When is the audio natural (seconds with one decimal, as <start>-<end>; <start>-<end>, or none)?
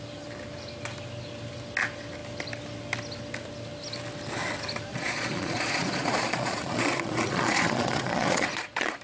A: 0.0-4.9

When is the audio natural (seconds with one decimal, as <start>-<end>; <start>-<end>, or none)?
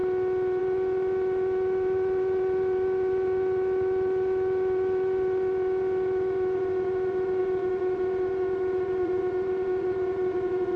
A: 0.0-0.6